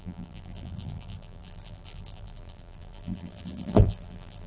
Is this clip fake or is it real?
fake